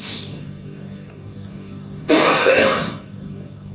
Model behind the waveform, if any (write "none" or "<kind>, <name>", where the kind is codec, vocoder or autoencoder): codec, DAC